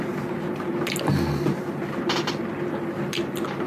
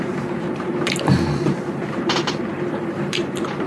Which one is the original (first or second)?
first